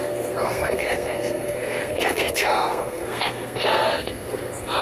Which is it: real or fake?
fake